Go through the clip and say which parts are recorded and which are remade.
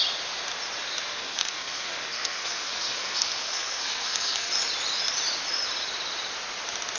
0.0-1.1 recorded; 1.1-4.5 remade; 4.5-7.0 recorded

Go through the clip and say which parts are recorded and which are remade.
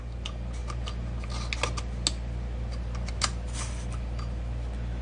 0.0-5.0 recorded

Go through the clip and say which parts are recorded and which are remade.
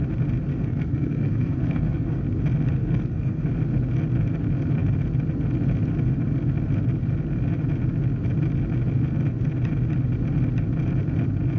0.0-0.5 recorded; 0.5-2.2 remade; 2.2-2.8 recorded; 2.8-3.5 remade; 3.5-11.6 recorded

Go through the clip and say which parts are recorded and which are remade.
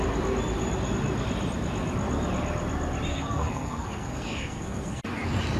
0.0-3.1 recorded; 3.1-5.0 remade; 5.0-5.6 recorded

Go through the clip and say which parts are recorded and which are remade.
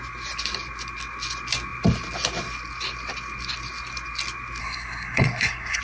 0.0-4.6 recorded; 4.6-5.8 remade